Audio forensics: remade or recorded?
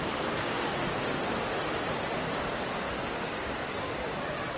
recorded